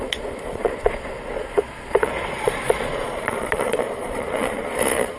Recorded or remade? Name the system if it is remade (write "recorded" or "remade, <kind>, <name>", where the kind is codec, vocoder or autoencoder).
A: remade, vocoder, Vocos